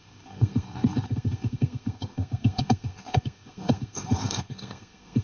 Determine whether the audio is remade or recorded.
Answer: remade